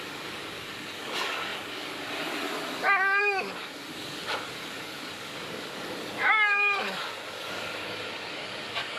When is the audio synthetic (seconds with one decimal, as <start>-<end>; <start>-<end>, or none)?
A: 0.0-9.0